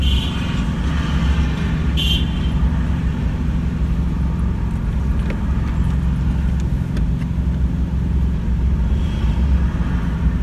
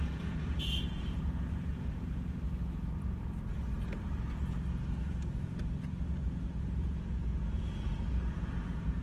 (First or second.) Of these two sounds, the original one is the first